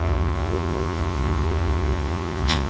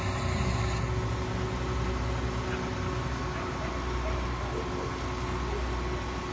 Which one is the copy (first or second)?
first